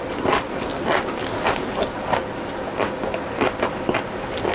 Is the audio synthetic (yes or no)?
no